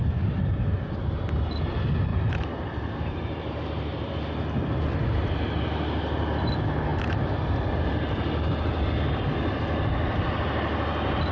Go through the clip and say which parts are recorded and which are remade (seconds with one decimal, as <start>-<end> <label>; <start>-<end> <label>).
0.0-2.1 recorded; 2.1-4.1 remade; 4.1-11.3 recorded